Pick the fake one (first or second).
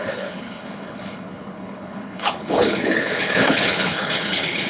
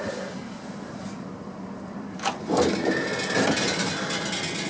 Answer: first